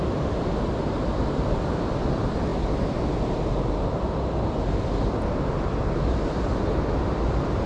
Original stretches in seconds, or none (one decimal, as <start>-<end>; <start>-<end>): 0.0-1.1; 1.8-7.7